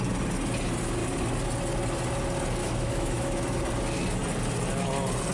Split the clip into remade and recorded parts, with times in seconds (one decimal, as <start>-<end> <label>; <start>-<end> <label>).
0.0-2.6 recorded; 2.6-3.6 remade; 3.6-5.3 recorded